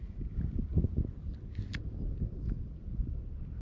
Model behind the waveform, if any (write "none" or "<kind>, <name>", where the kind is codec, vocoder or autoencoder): none